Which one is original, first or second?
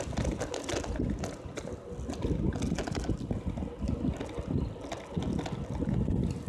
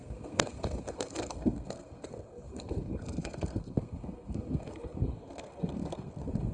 first